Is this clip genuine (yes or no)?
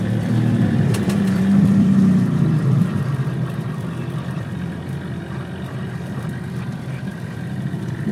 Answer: no